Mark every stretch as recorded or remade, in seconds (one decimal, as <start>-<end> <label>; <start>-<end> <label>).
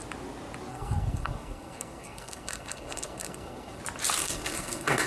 0.0-0.7 recorded; 0.7-3.8 remade; 3.8-4.2 recorded; 4.2-5.1 remade